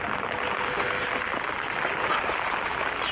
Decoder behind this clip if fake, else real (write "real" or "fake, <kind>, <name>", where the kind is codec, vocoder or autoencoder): real